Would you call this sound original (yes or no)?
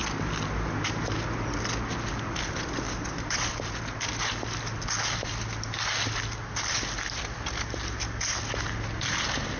yes